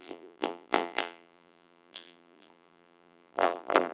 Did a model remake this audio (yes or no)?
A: yes